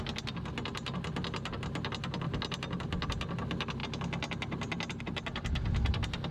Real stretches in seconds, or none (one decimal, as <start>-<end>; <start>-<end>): 0.0-6.3